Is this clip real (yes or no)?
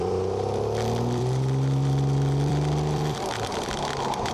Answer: no